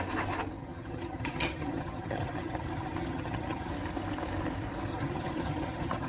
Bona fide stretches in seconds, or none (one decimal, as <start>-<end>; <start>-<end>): 0.0-0.6; 3.7-4.9